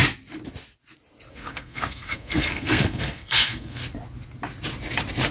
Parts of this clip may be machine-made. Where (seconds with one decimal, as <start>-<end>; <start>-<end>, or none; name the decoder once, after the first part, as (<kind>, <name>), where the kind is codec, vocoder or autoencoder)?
1.3-3.8 (codec, SNAC)